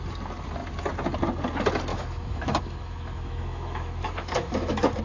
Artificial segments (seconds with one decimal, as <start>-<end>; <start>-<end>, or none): 1.9-5.0